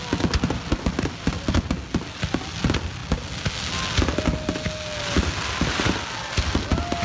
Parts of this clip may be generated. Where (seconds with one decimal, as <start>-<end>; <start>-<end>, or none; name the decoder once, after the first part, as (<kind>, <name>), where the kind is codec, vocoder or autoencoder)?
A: none